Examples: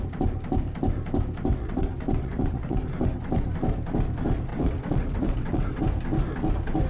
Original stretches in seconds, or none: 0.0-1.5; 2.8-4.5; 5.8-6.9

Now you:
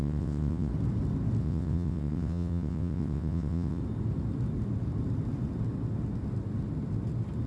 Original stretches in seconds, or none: 0.7-1.4; 3.8-7.5